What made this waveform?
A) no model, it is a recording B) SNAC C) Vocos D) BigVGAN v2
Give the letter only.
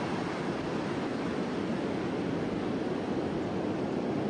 A